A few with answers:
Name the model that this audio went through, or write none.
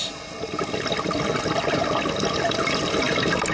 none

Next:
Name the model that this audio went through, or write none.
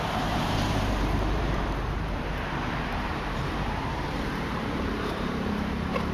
vocoder, BigVGAN v2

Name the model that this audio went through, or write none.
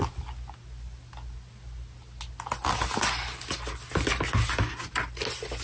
none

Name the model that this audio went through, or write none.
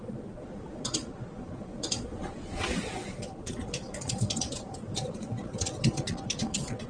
vocoder, Vocos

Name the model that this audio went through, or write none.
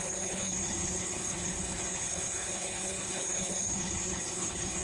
codec, HILCodec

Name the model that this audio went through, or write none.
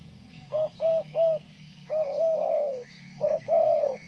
codec, SNAC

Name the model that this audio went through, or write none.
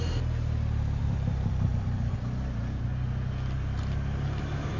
none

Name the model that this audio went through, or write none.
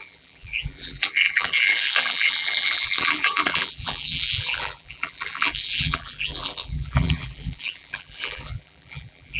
vocoder, BigVGAN v2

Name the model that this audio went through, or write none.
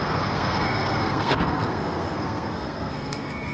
codec, SNAC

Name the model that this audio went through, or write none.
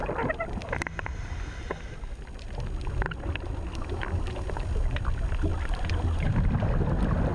none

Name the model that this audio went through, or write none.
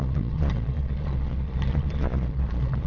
vocoder, Vocos